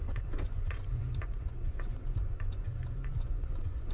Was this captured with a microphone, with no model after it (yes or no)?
no